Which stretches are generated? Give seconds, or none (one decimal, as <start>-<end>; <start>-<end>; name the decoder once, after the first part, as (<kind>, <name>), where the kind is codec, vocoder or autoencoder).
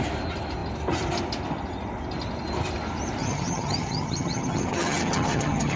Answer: 3.2-5.8 (vocoder, HiFi-GAN)